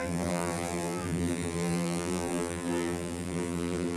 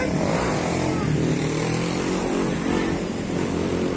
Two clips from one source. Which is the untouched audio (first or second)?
second